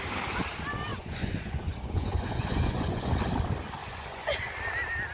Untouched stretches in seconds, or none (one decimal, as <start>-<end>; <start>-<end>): 0.0-0.9; 3.1-3.8; 4.5-5.1